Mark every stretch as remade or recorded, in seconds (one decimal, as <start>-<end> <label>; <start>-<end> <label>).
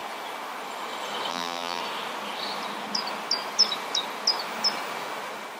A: 0.0-1.3 recorded; 1.3-1.8 remade; 1.8-5.6 recorded